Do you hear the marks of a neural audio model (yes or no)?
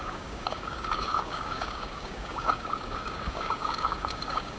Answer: yes